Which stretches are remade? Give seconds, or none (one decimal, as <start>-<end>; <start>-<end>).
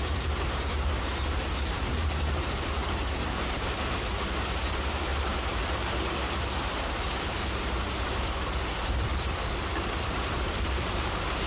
0.0-9.1; 9.8-11.5